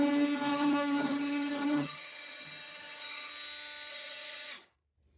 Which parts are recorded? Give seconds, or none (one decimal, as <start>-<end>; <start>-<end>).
0.0-0.5; 3.3-3.9; 4.7-5.2